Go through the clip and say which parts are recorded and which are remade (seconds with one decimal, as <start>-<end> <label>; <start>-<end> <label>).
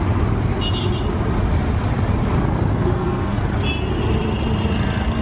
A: 0.0-2.7 recorded; 2.7-3.4 remade; 3.4-5.2 recorded